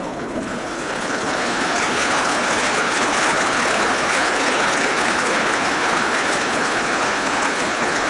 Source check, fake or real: fake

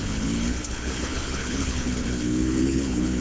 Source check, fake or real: fake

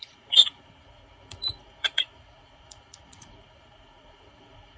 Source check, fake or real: fake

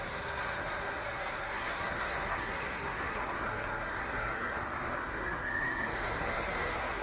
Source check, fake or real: fake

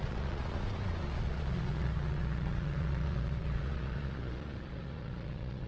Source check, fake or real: fake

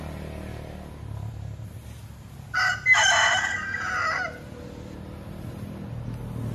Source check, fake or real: real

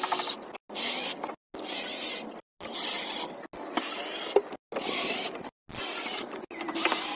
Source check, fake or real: real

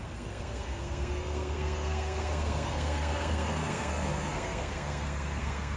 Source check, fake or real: fake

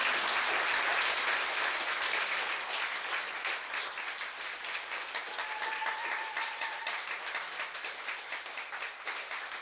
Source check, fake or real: real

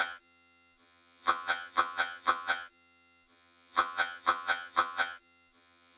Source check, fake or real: fake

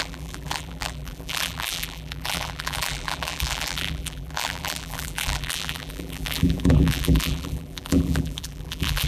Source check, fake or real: fake